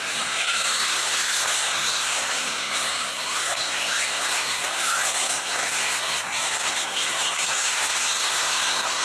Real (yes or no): no